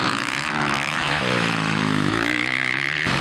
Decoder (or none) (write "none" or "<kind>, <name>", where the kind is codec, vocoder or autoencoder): autoencoder, DAC-VAE